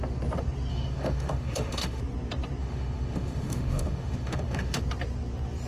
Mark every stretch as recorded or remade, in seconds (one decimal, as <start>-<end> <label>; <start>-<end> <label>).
0.0-0.7 recorded; 0.7-2.0 remade; 2.0-2.6 recorded; 2.6-4.8 remade; 4.8-5.7 recorded